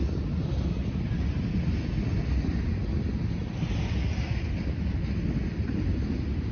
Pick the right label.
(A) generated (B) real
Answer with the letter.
B